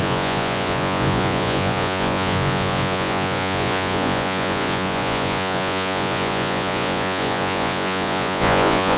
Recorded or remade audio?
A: remade